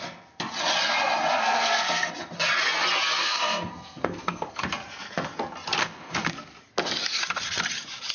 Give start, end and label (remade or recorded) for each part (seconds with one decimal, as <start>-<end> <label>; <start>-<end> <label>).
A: 0.0-1.4 recorded; 1.4-2.1 remade; 2.1-3.2 recorded; 3.2-4.6 remade; 4.6-5.8 recorded; 5.8-6.3 remade; 6.3-8.1 recorded